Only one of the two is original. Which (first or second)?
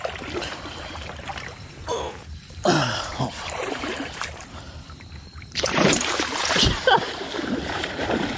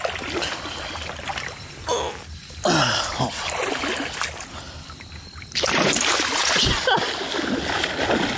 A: second